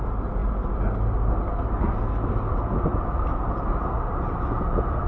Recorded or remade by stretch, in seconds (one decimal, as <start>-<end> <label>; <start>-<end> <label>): 0.0-5.1 recorded